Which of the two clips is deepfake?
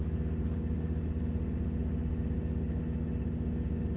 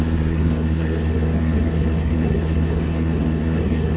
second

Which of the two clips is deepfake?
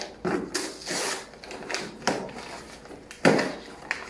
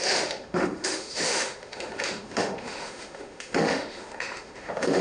second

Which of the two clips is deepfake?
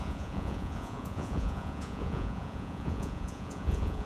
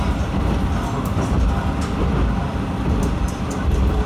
first